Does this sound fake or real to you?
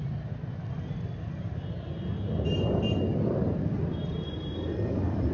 real